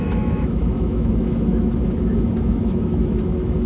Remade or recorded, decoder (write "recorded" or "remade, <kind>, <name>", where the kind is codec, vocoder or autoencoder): remade, autoencoder, DAC-VAE